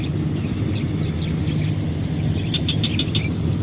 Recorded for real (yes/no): yes